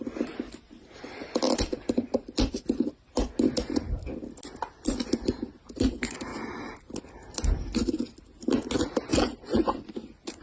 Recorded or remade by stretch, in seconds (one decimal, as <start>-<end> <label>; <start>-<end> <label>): 0.0-10.4 recorded